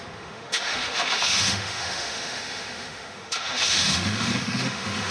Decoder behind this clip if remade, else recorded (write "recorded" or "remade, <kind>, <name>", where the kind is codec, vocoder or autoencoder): remade, autoencoder, DAC-VAE